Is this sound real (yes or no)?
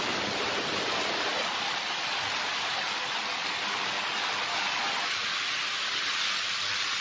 yes